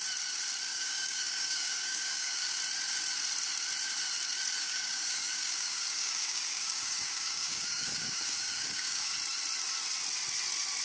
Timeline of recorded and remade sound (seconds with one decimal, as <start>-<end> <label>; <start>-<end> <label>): 0.0-0.7 recorded; 0.7-2.6 remade; 2.6-4.6 recorded; 4.6-9.1 remade; 9.1-10.8 recorded